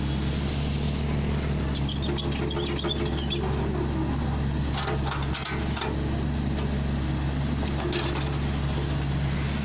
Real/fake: real